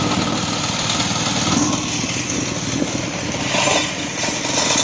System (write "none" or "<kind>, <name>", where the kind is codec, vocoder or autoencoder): none